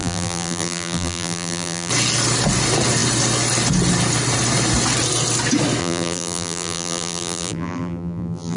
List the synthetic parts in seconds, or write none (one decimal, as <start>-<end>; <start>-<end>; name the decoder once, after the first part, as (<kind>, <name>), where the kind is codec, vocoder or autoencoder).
0.0-1.9 (vocoder, BigVGAN v2); 5.8-8.6